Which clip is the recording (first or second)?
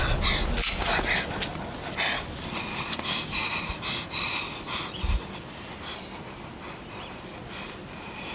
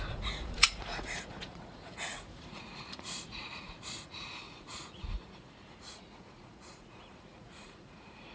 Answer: first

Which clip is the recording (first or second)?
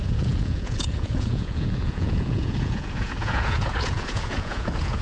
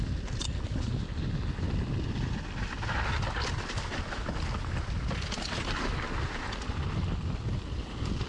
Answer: second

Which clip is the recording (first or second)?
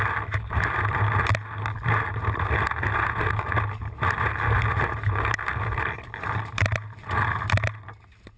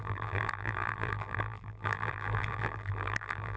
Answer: first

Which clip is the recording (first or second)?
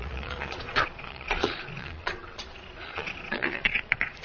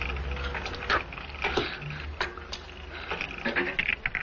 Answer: second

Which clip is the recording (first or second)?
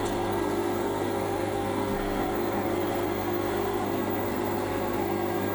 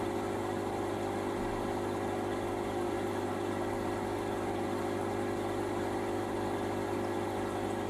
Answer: second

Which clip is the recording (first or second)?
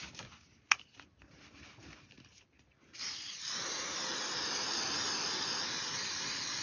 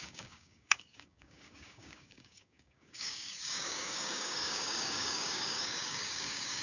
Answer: first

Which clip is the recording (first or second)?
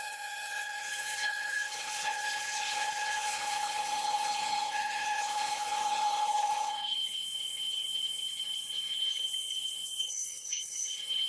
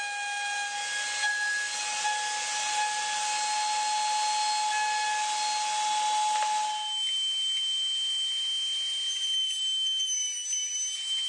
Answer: second